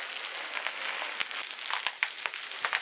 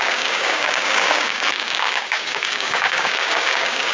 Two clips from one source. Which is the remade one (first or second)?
second